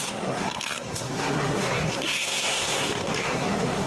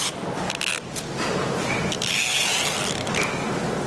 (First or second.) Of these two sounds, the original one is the second